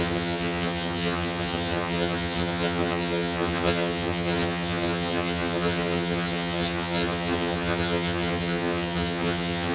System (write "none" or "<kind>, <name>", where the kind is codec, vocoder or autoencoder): vocoder, HiFi-GAN